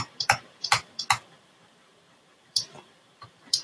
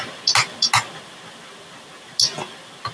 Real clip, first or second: second